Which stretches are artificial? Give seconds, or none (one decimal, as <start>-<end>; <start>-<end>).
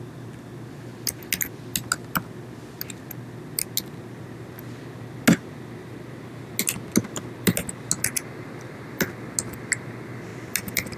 none